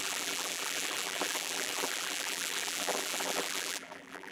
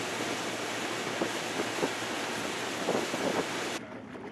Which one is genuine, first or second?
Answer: second